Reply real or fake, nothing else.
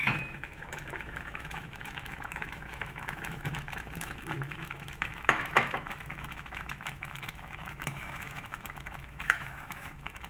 fake